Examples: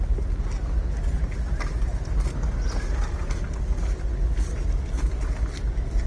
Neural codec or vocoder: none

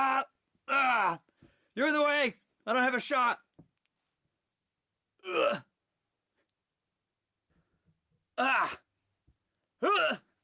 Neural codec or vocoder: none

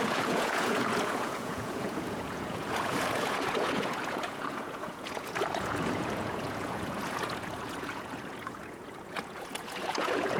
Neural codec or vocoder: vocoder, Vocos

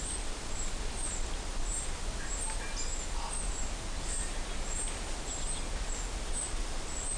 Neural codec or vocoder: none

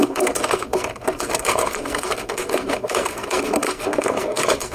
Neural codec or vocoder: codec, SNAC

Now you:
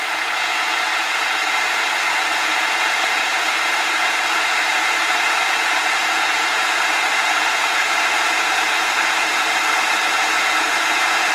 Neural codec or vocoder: vocoder, Vocos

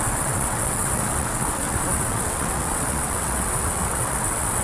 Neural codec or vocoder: vocoder, WaveNeXt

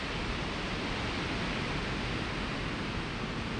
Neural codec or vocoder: none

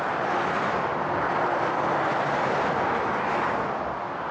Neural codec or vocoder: none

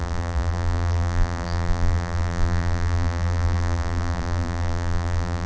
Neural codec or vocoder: vocoder, BigVGAN v2